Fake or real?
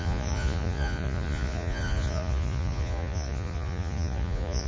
fake